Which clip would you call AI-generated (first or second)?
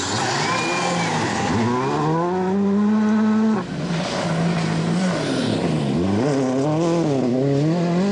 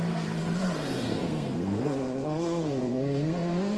second